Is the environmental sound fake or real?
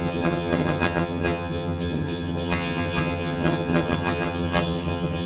fake